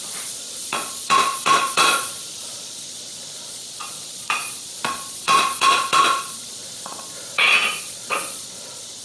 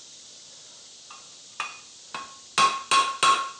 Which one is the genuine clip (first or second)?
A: second